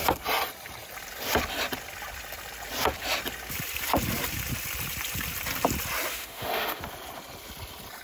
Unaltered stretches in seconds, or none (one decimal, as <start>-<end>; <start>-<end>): 0.0-6.1; 6.8-8.0